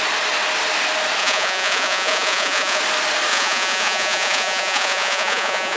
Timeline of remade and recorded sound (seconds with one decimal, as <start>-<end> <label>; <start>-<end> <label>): 0.0-1.2 recorded; 1.2-2.8 remade; 2.8-3.3 recorded; 3.3-5.8 remade